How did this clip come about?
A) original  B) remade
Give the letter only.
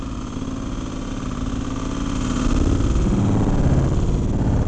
A